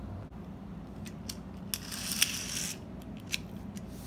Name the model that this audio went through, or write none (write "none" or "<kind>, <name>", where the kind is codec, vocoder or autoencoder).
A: none